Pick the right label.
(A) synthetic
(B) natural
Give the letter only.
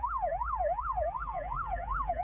A